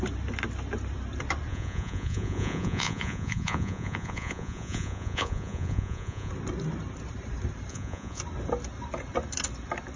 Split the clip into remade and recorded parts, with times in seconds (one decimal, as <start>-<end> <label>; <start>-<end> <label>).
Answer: 0.0-1.5 recorded; 1.5-6.3 remade; 6.3-7.7 recorded; 7.7-8.2 remade; 8.2-10.0 recorded